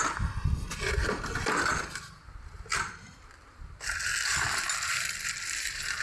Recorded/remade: recorded